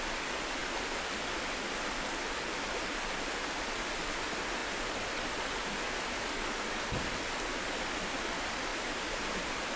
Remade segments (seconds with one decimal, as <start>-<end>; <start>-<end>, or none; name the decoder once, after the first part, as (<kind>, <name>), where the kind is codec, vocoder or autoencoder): none

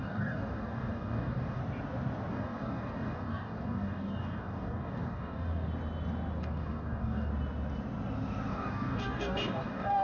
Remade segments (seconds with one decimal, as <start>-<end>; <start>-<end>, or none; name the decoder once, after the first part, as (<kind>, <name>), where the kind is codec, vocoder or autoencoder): 0.0-1.6 (codec, DAC); 2.3-5.7; 6.4-7.3; 8.5-10.0

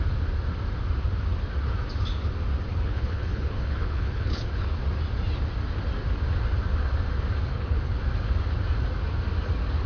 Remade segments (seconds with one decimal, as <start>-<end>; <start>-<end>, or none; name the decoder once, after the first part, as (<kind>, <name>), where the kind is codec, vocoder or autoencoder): 2.7-4.7 (codec, HILCodec); 7.5-8.0

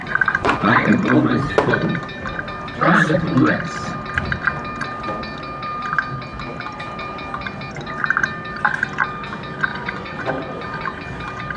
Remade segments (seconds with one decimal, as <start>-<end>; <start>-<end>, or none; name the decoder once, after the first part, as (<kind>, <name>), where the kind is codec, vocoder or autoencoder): 0.0-0.9 (vocoder, Vocos); 9.7-10.3